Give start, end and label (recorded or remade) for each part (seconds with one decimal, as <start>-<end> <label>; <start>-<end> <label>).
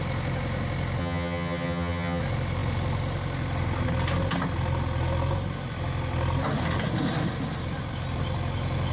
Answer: 0.0-1.0 recorded; 1.0-2.2 remade; 2.2-8.9 recorded